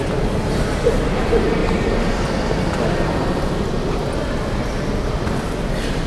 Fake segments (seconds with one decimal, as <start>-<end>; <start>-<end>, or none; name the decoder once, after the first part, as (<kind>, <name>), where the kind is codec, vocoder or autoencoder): none